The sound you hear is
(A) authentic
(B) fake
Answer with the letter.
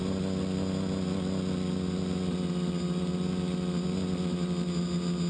A